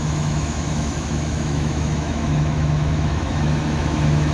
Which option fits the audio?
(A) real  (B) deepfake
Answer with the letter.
B